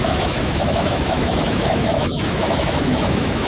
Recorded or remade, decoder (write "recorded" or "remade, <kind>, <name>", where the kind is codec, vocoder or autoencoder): remade, autoencoder, DAC-VAE